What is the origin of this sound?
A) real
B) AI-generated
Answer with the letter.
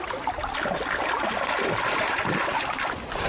B